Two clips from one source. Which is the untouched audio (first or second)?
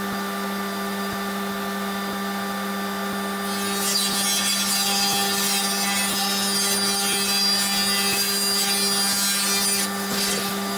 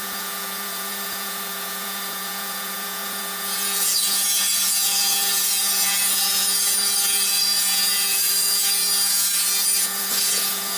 first